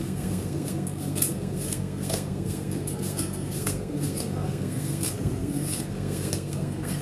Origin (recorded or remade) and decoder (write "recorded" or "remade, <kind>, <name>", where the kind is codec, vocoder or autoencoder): remade, codec, SNAC